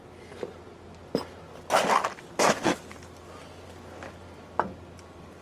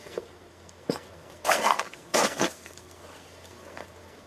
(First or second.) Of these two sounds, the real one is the first